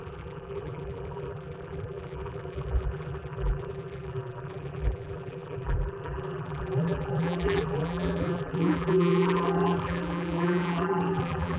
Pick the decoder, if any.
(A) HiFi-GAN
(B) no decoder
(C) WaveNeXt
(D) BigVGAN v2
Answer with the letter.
D